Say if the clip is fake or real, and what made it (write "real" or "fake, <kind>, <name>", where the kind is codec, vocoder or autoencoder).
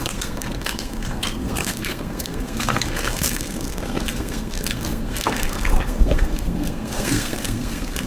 fake, codec, SNAC